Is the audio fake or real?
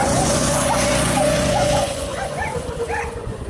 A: fake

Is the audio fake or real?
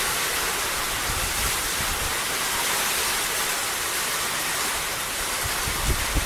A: real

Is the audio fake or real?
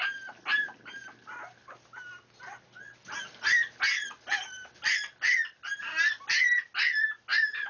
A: real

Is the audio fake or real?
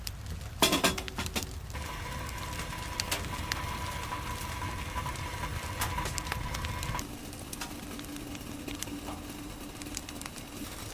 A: real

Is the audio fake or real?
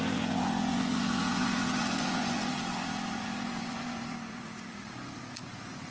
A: fake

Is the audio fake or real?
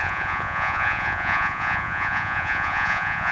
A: fake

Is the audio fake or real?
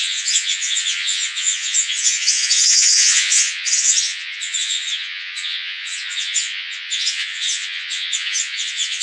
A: fake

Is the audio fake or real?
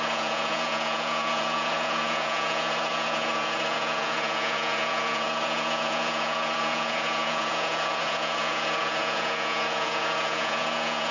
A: fake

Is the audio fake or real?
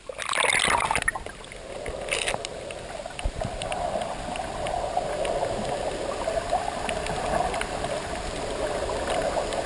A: real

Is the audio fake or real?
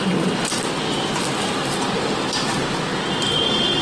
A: real